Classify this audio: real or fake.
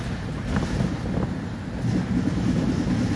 real